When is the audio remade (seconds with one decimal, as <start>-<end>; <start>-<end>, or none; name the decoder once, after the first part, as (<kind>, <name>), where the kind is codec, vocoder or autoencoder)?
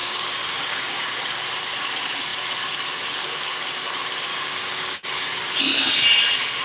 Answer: 0.0-1.1 (codec, DAC); 4.3-5.6